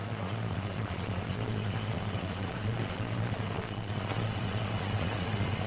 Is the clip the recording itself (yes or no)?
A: no